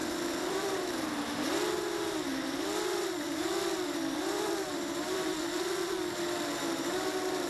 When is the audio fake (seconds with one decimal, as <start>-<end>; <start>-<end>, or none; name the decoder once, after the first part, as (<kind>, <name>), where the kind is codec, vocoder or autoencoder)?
0.0-0.9 (vocoder, BigVGAN v2); 2.3-6.5